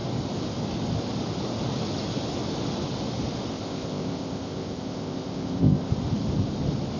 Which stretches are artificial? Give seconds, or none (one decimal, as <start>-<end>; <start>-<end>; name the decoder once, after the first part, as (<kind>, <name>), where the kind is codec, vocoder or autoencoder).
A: 3.5-5.9 (codec, ZipCodec)